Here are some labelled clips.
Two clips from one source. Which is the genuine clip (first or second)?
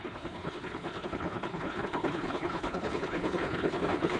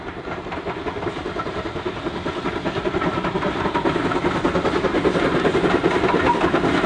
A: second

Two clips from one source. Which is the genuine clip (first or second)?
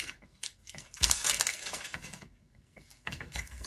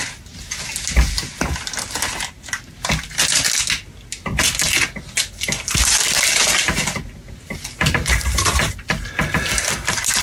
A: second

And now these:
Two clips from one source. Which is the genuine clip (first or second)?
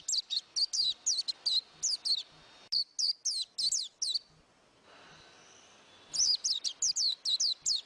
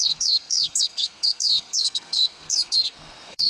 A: first